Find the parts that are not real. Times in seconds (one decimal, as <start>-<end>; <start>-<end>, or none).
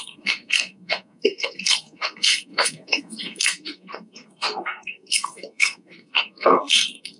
0.0-7.2